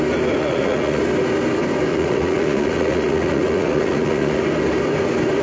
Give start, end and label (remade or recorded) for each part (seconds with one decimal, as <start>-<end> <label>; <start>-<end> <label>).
0.0-0.4 recorded; 0.4-1.0 remade; 1.0-1.9 recorded; 1.9-4.4 remade; 4.4-5.4 recorded